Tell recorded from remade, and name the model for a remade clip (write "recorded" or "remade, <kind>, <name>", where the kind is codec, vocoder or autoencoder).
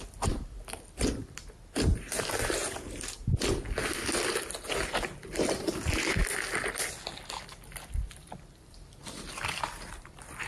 recorded